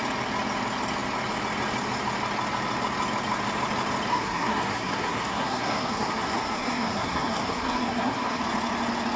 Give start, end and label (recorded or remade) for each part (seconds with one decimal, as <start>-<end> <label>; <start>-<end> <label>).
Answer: 0.0-4.1 recorded; 4.1-8.4 remade; 8.4-9.2 recorded